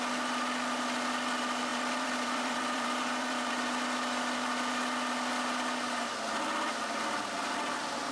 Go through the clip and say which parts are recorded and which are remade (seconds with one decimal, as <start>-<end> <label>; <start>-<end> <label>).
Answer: 0.0-1.7 recorded; 1.7-3.5 remade; 3.5-8.1 recorded